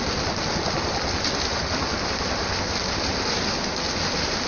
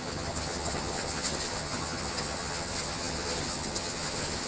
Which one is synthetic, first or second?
second